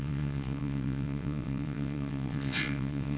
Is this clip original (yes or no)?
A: no